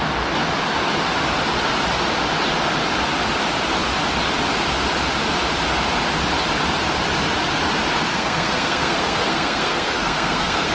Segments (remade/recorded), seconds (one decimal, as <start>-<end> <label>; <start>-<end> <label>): 0.0-8.1 recorded; 8.1-10.7 remade